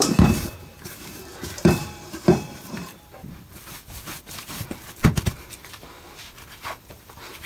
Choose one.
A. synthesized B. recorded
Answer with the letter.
A